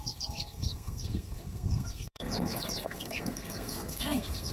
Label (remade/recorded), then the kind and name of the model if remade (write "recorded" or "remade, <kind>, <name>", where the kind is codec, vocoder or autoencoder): remade, codec, SNAC